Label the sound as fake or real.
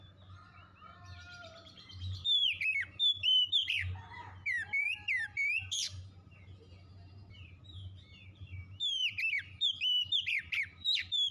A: fake